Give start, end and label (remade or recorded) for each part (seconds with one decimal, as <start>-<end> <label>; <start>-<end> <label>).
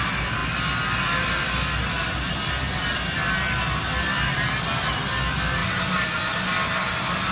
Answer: 0.0-7.3 recorded